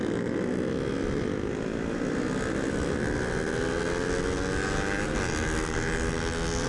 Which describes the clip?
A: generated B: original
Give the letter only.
B